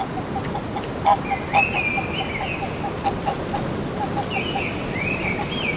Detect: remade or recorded recorded